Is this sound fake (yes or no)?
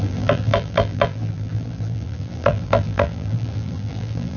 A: yes